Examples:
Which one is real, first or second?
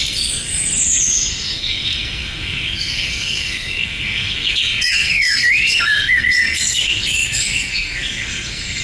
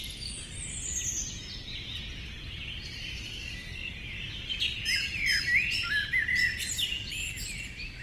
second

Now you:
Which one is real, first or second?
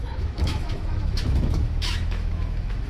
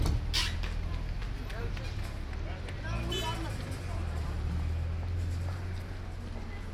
second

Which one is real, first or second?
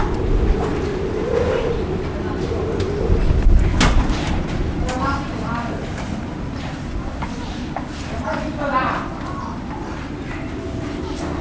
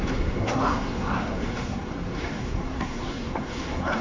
first